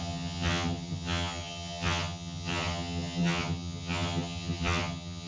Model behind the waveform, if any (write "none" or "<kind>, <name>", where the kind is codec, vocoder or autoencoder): vocoder, HiFi-GAN